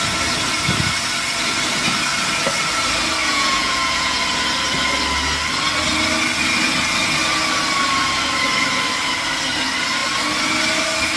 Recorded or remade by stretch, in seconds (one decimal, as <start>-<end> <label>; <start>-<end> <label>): 0.0-3.2 recorded; 3.2-4.2 remade; 4.2-11.2 recorded